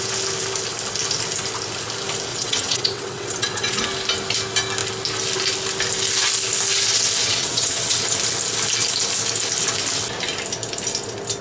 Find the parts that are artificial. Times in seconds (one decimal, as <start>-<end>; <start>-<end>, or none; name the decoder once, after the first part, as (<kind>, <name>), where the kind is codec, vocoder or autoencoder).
2.3-3.8 (vocoder, WaveNeXt); 7.2-8.0